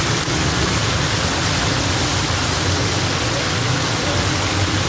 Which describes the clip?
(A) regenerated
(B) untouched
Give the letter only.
B